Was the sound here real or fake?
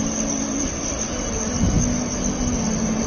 real